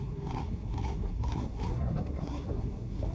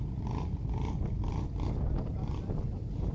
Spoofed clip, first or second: first